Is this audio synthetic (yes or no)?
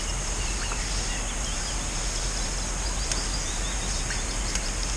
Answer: no